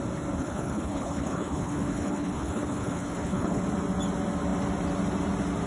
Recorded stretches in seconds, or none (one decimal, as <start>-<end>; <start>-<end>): 0.0-0.4; 3.6-5.7